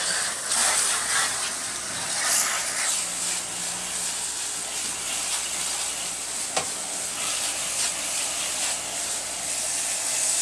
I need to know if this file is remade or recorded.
recorded